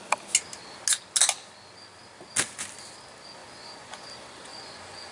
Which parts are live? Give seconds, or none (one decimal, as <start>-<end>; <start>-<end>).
0.0-3.4; 4.0-4.5